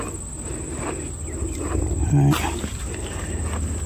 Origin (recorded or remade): recorded